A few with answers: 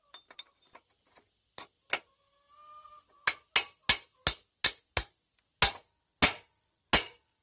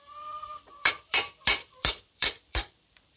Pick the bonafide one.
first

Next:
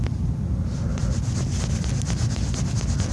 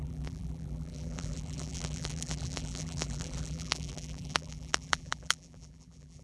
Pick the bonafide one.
first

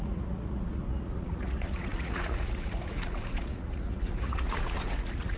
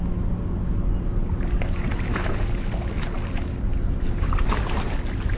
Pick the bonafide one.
second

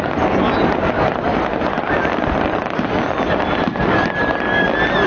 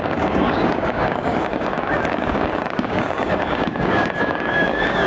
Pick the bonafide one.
first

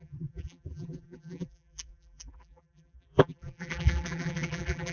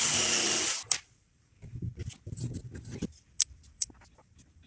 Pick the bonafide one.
second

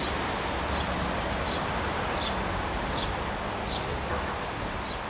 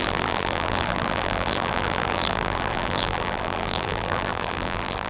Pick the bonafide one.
first